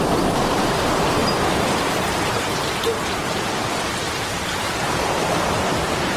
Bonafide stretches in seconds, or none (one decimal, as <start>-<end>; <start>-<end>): 1.2-2.1; 2.5-3.6